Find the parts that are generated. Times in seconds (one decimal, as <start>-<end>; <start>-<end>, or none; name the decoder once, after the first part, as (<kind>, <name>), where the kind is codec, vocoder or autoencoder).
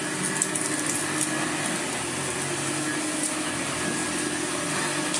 none